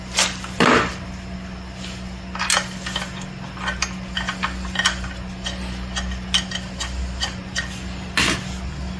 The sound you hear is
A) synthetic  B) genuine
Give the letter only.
B